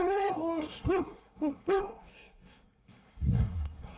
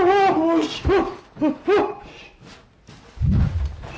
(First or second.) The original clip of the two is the second